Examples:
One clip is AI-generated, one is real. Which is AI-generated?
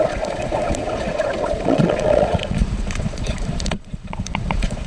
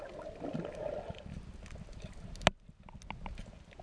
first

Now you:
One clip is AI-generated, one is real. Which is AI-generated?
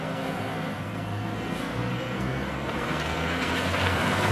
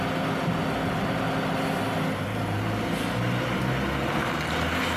first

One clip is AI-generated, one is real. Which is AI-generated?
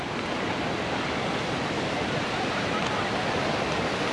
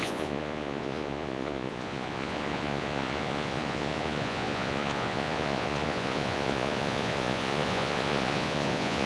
second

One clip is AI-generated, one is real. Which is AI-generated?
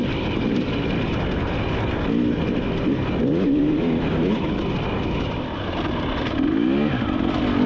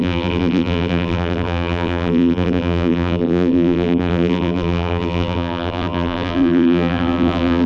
second